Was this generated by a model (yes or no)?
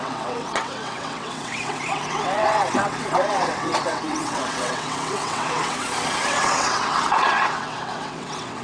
yes